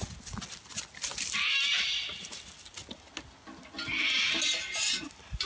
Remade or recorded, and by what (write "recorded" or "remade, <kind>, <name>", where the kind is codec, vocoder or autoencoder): recorded